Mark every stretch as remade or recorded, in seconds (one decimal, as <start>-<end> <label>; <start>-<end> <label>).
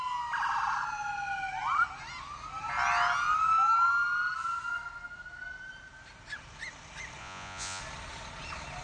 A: 0.0-7.2 recorded; 7.2-7.8 remade; 7.8-8.8 recorded